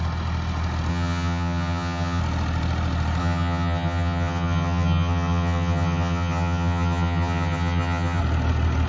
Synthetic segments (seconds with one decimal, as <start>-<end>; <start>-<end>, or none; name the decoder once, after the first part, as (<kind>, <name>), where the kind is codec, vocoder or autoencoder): 0.9-2.2 (vocoder, HiFi-GAN); 3.2-8.2